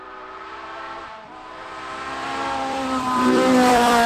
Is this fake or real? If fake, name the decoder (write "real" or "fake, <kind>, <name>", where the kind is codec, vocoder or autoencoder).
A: fake, vocoder, BigVGAN v2